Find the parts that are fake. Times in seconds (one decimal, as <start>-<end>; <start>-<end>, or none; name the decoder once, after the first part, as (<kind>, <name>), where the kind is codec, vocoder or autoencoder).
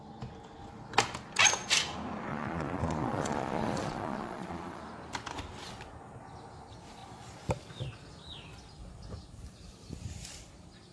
2.3-4.8 (vocoder, Vocos)